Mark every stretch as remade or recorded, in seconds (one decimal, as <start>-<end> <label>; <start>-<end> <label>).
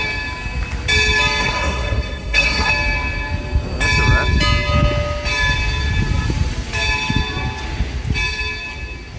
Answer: 0.0-1.4 recorded; 1.4-2.7 remade; 2.7-9.2 recorded